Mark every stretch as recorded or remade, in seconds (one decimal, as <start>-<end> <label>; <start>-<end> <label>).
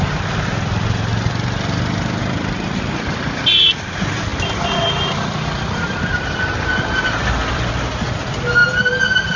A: 0.0-4.3 recorded; 4.3-7.7 remade; 7.7-9.4 recorded